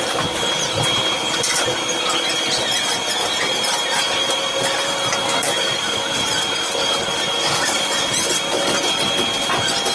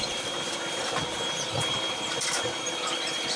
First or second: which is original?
first